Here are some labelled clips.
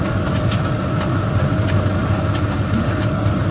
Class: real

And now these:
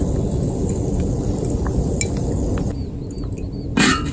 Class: real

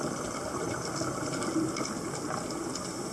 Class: real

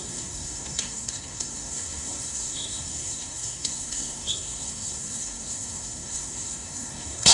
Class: fake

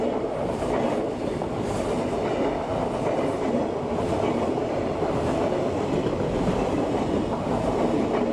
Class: real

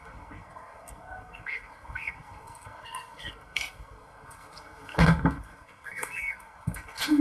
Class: fake